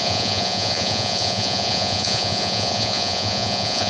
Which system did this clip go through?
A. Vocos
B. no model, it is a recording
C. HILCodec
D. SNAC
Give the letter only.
A